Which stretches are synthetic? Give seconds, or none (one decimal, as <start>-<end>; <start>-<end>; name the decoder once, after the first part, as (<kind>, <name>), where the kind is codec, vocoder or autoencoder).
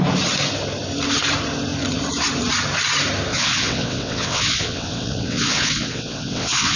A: 3.3-6.8 (vocoder, WaveNeXt)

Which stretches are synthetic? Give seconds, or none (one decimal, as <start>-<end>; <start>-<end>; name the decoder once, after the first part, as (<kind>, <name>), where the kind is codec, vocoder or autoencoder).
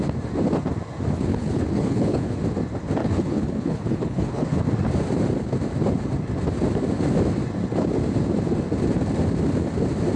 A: 1.3-2.3 (codec, HILCodec); 3.0-4.6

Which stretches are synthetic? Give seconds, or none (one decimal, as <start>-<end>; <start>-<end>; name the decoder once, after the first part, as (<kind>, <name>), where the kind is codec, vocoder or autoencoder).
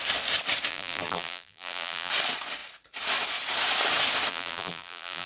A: 0.7-2.1 (vocoder, BigVGAN v2); 4.3-5.3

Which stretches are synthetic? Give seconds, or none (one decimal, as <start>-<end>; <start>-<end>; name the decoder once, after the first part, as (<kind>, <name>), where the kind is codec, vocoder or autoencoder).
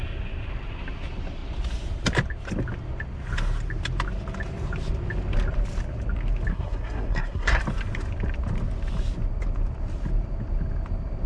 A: 6.5-7.6 (codec, SNAC)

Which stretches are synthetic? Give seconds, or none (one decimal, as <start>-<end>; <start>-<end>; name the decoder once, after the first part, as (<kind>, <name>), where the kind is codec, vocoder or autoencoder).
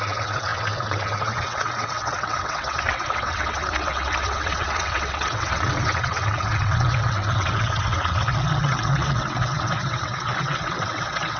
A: 0.0-11.4 (vocoder, WaveNeXt)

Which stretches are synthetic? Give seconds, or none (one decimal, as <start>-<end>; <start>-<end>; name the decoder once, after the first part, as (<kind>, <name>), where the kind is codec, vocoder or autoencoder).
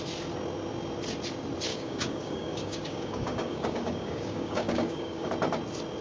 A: 1.7-5.3 (codec, DAC)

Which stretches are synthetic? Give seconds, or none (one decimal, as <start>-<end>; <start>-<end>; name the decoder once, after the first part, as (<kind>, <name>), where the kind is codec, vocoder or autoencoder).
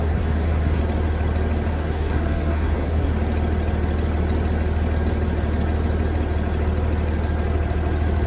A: 0.0-0.8 (codec, SNAC); 1.7-3.1